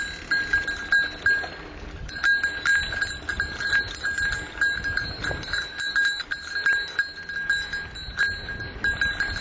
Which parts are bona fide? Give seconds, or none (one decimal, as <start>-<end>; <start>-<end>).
0.0-9.4